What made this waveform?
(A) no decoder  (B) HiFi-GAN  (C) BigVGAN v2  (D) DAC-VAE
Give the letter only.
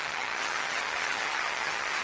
B